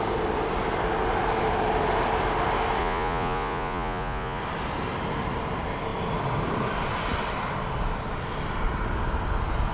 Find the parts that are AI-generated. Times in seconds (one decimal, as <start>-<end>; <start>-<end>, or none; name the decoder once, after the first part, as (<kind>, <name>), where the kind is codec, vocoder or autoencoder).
2.8-4.4 (vocoder, Vocos)